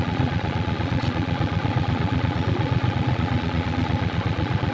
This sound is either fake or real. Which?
fake